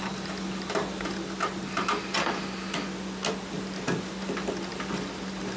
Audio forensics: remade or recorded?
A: recorded